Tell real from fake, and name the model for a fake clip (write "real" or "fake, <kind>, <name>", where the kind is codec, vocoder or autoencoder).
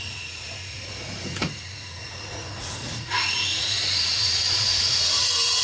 fake, vocoder, Vocos